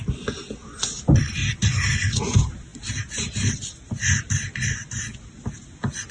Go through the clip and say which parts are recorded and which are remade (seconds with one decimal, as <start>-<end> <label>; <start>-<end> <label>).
0.0-1.4 recorded; 1.4-1.9 remade; 1.9-2.7 recorded; 2.7-4.3 remade; 4.3-6.1 recorded